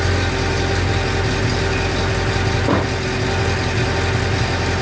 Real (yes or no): yes